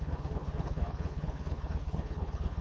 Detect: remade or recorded remade